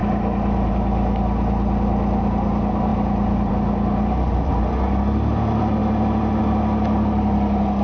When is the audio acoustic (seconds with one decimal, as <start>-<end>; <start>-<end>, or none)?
0.7-2.9; 3.5-7.8